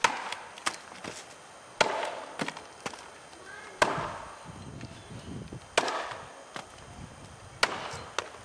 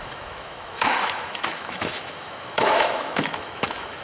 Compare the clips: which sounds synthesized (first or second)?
second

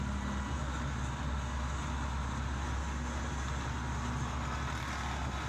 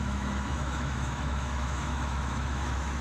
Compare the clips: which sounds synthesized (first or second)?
second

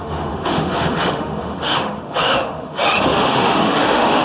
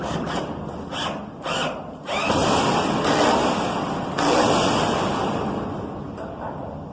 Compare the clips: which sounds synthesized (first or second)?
first